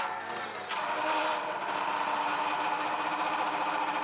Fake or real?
real